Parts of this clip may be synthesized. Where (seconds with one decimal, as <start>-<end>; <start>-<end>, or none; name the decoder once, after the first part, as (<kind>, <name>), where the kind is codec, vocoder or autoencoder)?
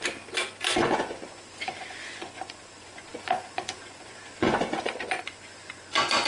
0.8-6.3 (vocoder, Vocos)